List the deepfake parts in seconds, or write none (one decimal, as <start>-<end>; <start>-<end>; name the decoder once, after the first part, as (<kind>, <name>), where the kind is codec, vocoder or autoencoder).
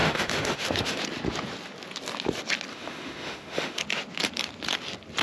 0.0-1.0 (autoencoder, DAC-VAE); 2.7-3.8